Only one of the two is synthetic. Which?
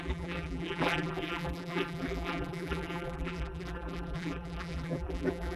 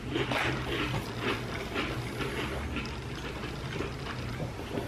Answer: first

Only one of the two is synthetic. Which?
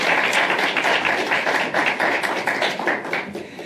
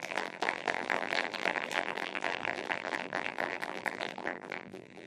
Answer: second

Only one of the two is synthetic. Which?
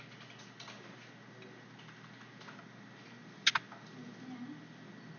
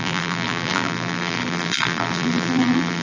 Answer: second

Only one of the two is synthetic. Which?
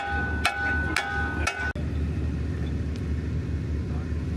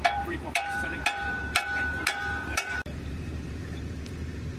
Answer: second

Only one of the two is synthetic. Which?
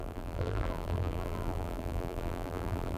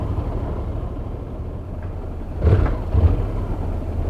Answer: first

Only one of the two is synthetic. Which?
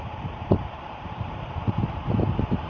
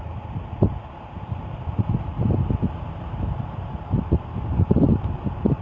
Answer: first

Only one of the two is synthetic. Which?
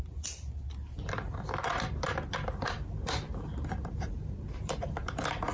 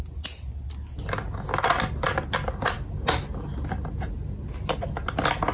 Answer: first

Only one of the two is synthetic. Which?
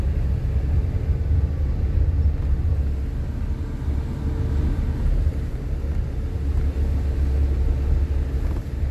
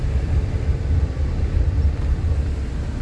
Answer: second